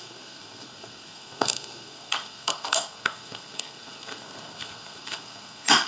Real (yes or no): no